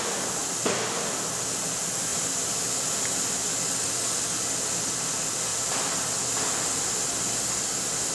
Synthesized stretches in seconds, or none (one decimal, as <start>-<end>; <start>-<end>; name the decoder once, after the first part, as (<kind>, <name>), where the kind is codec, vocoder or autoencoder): 0.4-1.1 (vocoder, BigVGAN v2); 2.1-3.0; 5.5-6.0